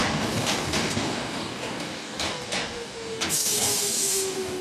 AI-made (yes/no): yes